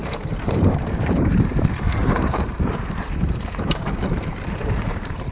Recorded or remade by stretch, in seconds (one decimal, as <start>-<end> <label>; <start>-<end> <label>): 0.0-5.3 remade